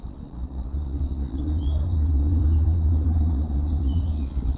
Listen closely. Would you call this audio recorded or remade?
remade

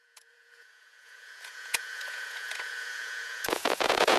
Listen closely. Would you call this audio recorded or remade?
remade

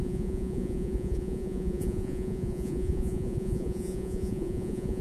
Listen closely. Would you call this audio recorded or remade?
remade